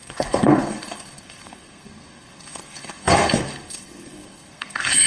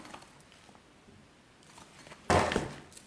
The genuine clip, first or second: second